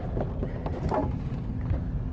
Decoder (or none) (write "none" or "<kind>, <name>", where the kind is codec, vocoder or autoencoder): none